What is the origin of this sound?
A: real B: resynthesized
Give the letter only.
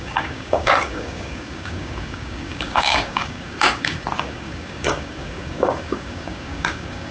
B